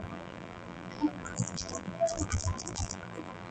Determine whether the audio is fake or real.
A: fake